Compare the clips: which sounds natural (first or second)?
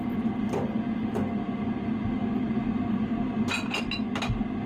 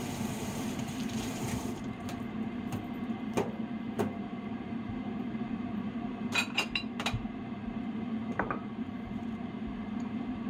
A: first